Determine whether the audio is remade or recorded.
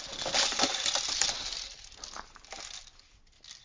recorded